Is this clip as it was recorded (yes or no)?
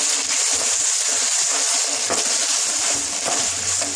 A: yes